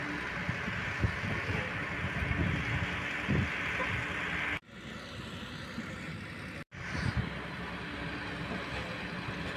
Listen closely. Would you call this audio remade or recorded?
recorded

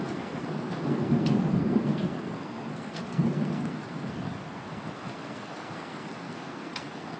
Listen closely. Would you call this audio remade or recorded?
remade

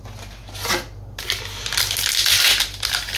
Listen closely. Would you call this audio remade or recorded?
recorded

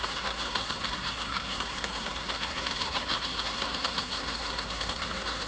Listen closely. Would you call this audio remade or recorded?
remade